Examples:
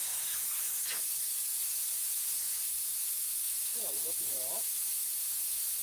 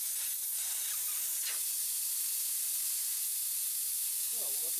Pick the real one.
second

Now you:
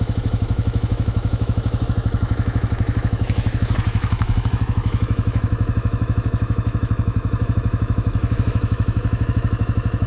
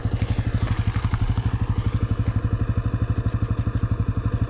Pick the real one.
second